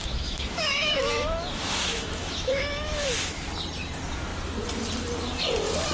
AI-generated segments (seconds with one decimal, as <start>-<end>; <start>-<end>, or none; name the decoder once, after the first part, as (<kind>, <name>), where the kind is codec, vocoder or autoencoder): 0.0-3.4 (autoencoder, DAC-VAE)